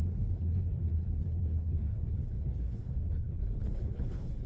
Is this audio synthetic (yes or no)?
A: yes